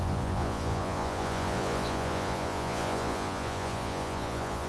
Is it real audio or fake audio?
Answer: fake